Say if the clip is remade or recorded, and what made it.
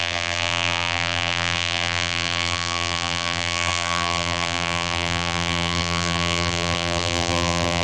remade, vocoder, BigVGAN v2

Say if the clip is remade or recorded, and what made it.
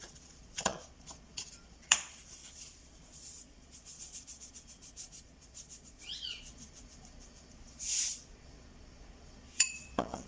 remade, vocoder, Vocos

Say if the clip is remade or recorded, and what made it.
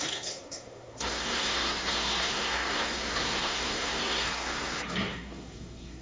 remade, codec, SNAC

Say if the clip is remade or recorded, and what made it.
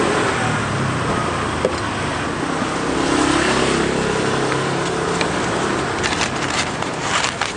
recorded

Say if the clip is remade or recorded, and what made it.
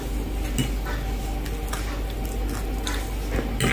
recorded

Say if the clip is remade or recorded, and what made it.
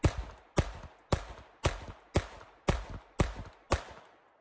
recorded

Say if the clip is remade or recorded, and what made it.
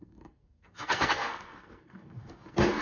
remade, codec, SNAC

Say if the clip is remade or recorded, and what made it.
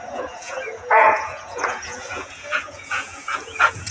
remade, vocoder, Vocos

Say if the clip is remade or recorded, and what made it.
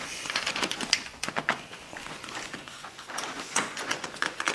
remade, vocoder, Vocos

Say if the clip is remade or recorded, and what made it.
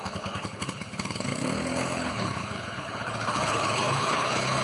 remade, codec, HILCodec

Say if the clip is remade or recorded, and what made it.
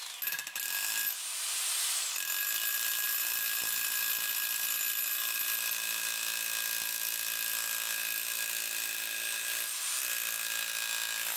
recorded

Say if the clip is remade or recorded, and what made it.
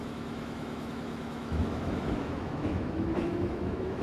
remade, autoencoder, DAC-VAE